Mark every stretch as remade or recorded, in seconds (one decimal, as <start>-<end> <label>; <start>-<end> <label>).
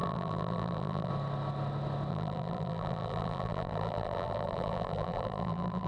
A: 0.0-1.1 remade; 1.1-2.1 recorded; 2.1-5.9 remade